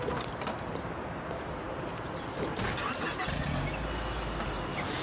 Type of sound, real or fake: real